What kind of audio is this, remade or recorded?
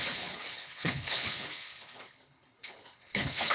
remade